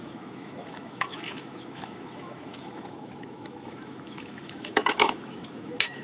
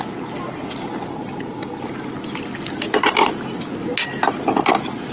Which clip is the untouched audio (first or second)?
second